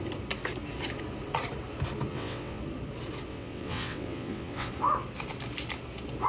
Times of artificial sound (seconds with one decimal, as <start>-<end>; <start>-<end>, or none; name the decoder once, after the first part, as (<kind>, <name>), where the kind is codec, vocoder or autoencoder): 2.1-2.6 (vocoder, WaveNeXt); 3.3-4.7